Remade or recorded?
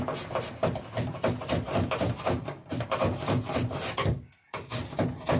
recorded